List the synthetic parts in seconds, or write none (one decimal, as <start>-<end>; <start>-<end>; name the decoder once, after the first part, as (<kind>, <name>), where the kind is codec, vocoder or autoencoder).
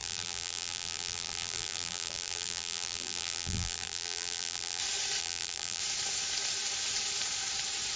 0.0-4.8 (vocoder, BigVGAN v2); 5.2-5.8